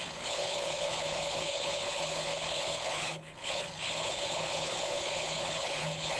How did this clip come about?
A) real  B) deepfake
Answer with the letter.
B